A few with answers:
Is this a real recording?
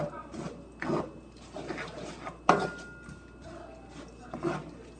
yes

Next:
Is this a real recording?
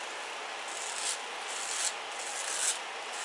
yes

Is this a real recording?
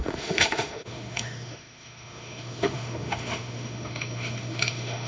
no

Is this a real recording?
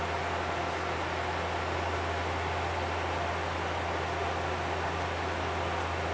yes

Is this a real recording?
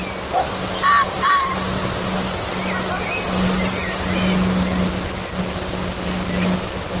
yes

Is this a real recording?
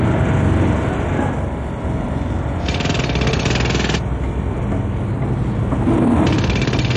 yes